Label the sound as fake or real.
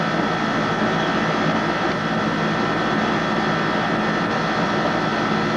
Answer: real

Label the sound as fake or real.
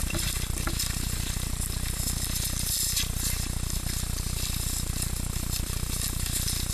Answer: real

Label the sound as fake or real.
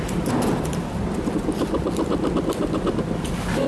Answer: real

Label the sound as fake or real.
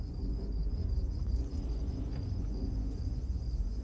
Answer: fake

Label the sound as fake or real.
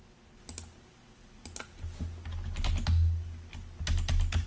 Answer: real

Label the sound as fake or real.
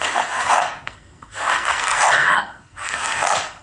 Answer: fake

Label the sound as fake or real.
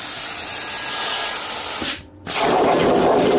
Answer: real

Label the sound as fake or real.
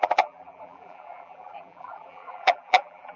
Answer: fake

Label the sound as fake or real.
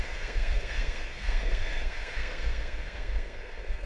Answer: fake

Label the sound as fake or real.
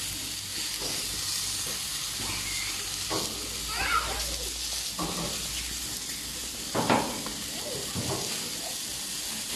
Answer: real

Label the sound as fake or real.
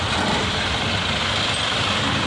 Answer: real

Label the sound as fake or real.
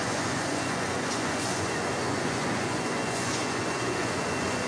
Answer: fake